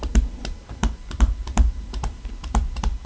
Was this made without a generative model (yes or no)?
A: no